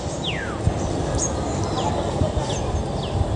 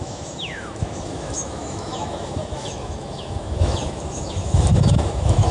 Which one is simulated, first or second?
second